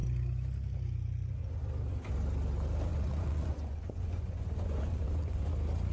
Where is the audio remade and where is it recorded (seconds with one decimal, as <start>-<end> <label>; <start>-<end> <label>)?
0.0-2.9 recorded; 2.9-5.5 remade; 5.5-5.9 recorded